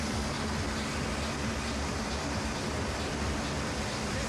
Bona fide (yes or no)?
yes